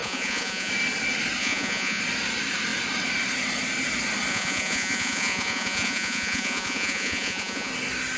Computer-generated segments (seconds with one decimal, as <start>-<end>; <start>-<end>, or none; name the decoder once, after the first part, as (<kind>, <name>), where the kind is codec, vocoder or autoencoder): 0.0-0.7 (vocoder, Vocos); 1.4-2.0; 4.3-7.7